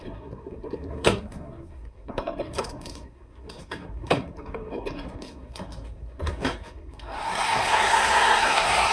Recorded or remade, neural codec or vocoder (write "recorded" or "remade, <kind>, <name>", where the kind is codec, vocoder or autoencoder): remade, codec, SNAC